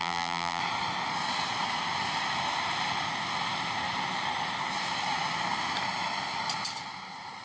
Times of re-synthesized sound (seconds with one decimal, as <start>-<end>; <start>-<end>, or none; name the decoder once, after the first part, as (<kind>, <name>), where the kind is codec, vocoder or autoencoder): 0.0-0.6 (vocoder, BigVGAN v2)